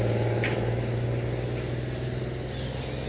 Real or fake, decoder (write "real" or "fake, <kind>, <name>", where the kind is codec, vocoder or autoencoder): real